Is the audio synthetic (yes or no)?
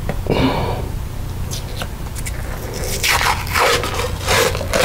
no